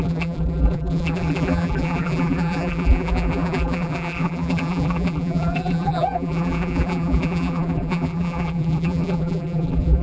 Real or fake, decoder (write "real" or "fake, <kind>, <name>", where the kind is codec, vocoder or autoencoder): fake, vocoder, BigVGAN v2